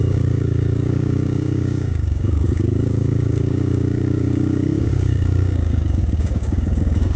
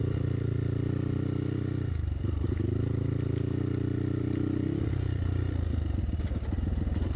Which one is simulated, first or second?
first